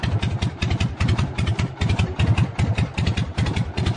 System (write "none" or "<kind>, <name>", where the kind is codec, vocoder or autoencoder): vocoder, BigVGAN v2